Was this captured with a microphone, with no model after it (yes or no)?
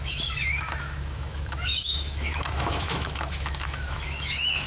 no